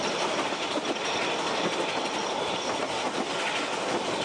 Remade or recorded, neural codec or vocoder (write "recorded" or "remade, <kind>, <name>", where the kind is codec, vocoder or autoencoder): recorded